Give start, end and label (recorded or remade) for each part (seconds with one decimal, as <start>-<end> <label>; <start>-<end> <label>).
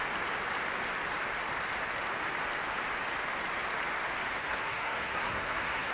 0.0-4.4 recorded; 4.4-5.9 remade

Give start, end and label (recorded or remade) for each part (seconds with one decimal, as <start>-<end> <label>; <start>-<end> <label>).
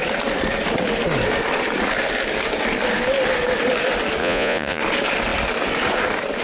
0.0-4.2 recorded; 4.2-4.8 remade; 4.8-6.4 recorded